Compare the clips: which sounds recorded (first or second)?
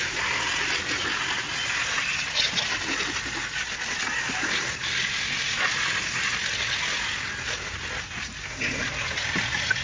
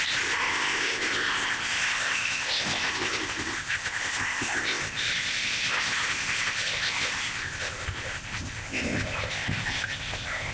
first